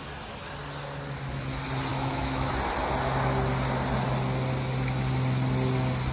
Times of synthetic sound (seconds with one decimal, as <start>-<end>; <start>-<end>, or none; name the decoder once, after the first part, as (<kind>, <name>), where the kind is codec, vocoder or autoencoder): 1.9-2.5 (autoencoder, DAC-VAE)